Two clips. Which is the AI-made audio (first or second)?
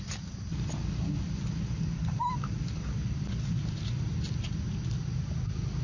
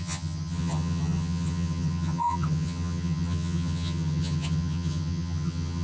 second